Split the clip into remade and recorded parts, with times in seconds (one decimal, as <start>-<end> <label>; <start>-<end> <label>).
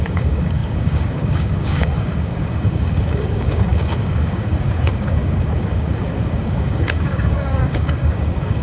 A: 0.0-8.6 remade